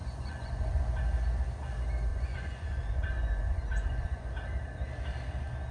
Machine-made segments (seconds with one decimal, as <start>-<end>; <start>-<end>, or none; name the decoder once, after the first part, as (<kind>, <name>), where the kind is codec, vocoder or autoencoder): 0.0-1.0 (vocoder, Vocos); 2.1-4.3